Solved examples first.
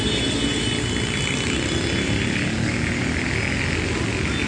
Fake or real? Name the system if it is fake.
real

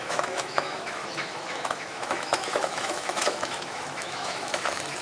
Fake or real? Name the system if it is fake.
fake, autoencoder, DAC-VAE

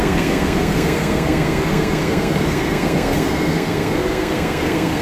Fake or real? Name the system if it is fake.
fake, codec, SNAC